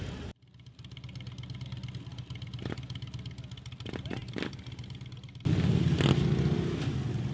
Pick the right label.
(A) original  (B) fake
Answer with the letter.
A